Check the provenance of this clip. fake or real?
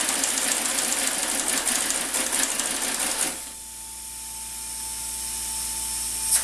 real